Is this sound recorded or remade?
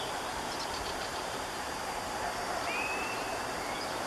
remade